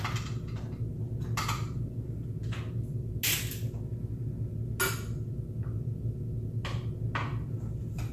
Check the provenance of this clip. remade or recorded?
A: recorded